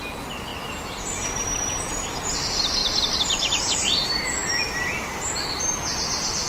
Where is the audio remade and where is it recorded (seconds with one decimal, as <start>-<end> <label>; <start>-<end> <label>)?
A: 0.0-2.8 recorded; 2.8-3.5 remade; 3.5-6.5 recorded